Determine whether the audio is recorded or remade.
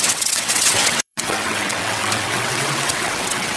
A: remade